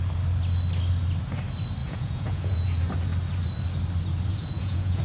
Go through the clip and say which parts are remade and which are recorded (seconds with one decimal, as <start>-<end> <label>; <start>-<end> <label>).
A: 0.0-1.8 recorded; 1.8-2.8 remade; 2.8-4.3 recorded; 4.3-5.0 remade